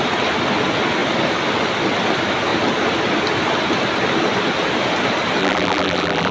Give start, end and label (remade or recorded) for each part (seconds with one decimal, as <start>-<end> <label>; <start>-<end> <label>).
0.0-5.4 recorded; 5.4-6.3 remade